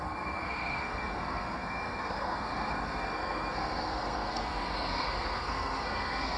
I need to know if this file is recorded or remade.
remade